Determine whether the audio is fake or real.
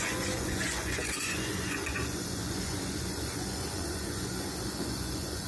fake